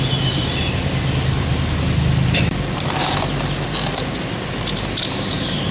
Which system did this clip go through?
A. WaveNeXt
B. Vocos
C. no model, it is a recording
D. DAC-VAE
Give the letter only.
C